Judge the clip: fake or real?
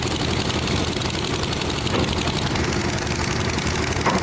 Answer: real